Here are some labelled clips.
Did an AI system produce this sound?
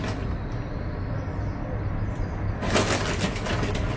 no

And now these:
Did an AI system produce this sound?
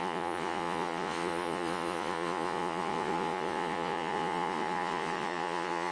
yes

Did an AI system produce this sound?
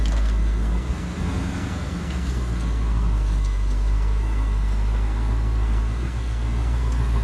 yes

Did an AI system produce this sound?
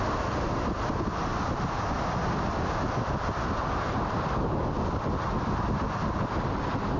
no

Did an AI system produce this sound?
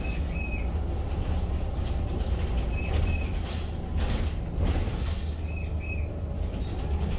no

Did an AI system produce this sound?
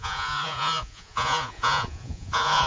yes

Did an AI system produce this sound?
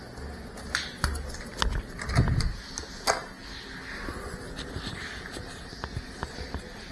no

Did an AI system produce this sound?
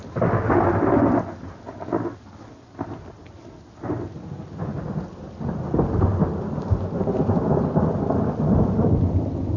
no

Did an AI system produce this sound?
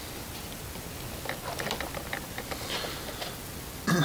no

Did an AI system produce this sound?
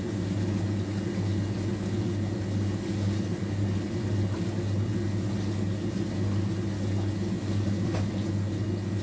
no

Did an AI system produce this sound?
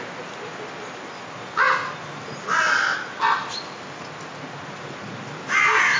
no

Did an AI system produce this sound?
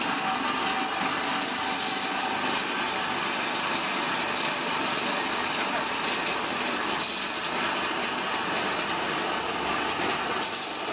no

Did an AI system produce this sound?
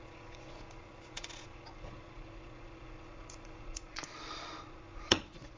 yes